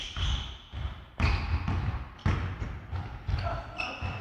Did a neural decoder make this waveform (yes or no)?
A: no